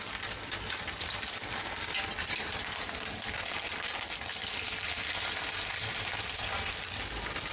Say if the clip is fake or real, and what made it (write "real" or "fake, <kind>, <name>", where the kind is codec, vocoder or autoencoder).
real